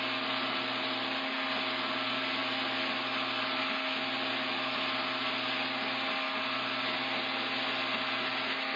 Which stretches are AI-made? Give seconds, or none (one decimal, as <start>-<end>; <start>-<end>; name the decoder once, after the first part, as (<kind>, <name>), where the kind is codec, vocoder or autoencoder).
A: none